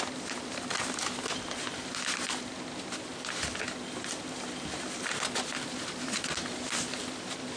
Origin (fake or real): real